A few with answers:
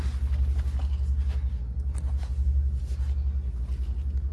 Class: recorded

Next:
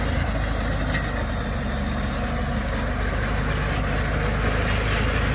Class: recorded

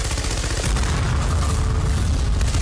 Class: recorded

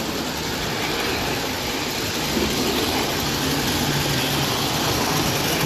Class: recorded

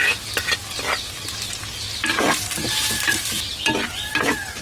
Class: recorded